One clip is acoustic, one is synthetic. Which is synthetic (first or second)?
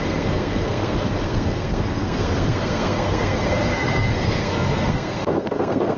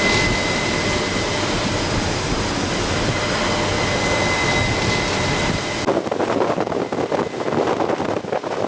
first